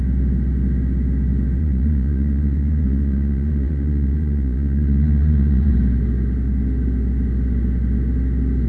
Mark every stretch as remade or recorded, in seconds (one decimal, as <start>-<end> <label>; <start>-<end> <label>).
0.0-1.6 recorded; 1.6-5.7 remade; 5.7-8.7 recorded